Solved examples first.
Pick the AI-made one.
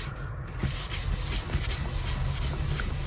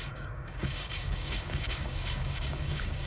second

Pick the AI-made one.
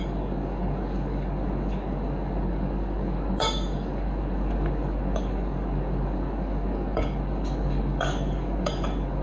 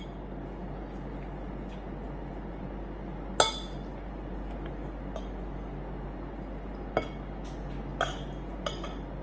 first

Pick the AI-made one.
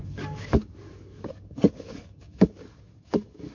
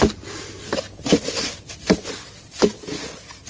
first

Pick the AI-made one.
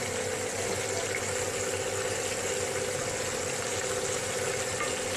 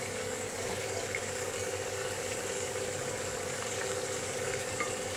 second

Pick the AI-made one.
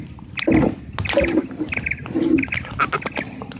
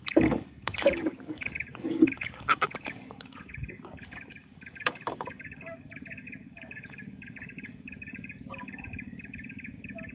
second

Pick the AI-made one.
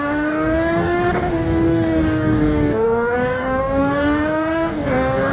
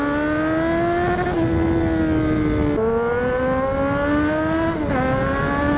first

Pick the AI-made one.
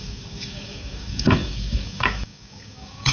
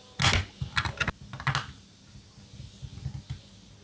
first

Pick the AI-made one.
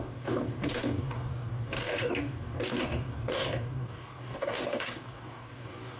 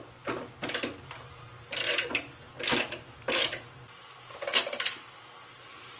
first